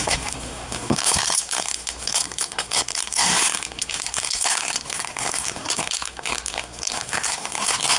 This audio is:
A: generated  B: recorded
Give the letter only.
A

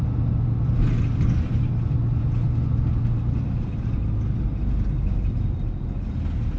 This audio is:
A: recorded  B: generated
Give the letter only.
A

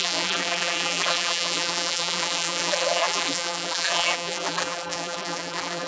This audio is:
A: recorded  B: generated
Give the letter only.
B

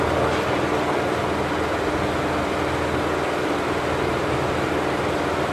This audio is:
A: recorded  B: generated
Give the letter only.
A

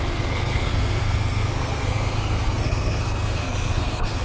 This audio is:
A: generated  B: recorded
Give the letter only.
A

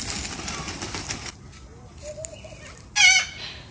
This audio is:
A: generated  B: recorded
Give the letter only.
B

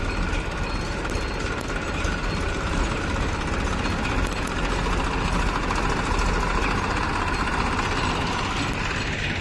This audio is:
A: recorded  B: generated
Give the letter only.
A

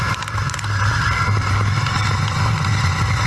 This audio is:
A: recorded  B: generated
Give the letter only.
A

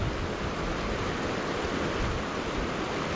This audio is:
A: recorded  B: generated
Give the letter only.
A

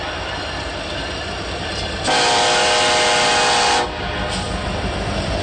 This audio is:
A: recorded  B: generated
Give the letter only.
A